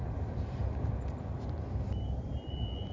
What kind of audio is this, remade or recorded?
recorded